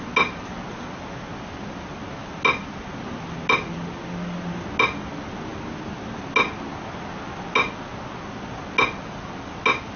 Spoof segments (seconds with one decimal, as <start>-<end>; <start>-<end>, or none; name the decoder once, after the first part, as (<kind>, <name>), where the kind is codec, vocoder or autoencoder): none